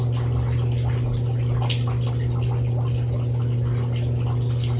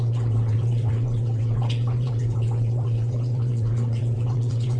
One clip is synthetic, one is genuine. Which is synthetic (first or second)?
second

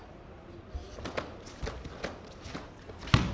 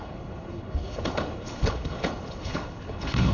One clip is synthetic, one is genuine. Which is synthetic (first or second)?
second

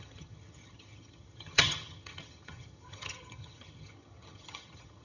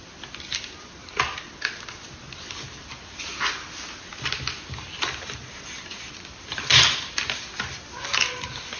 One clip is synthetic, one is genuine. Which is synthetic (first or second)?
first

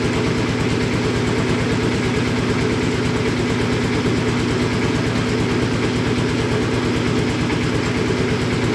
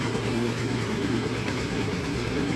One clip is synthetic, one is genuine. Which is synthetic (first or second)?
second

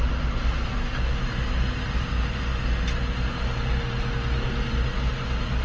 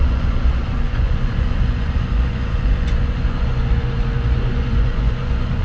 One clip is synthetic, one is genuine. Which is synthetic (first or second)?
second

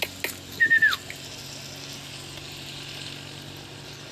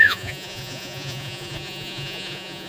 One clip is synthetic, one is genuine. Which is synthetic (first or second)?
second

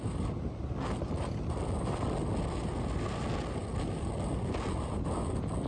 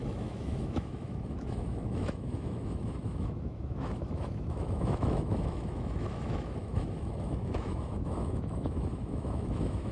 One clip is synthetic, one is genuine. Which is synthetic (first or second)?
second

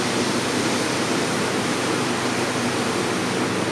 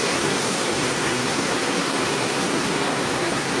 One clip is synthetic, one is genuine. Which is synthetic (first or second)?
second